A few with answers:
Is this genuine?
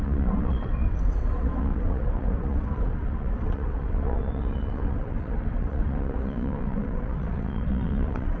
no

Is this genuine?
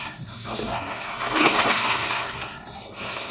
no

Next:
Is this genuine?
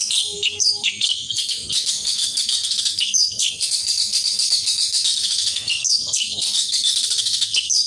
no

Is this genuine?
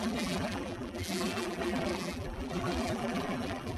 no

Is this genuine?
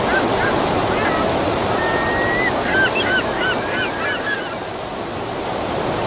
yes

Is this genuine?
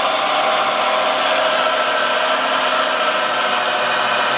yes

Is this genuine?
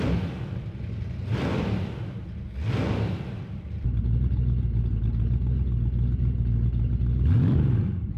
yes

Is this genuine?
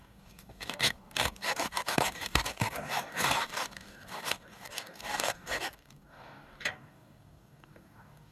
no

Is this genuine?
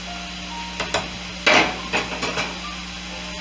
yes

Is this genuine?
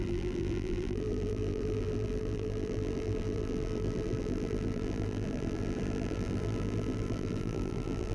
no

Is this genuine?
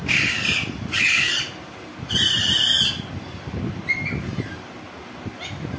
yes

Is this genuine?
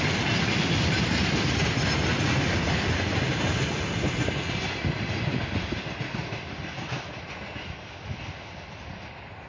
yes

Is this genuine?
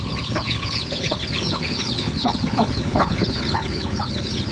no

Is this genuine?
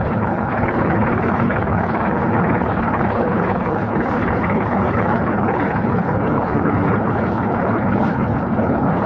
no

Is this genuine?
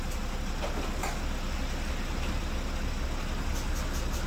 yes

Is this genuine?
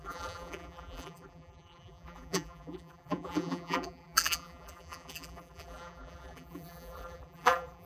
no